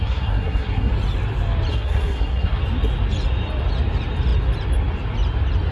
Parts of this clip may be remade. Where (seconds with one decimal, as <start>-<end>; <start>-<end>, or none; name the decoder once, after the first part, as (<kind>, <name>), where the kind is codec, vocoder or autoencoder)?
0.0-0.9 (codec, SNAC); 1.7-2.6